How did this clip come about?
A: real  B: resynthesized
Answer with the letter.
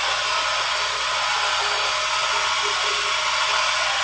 A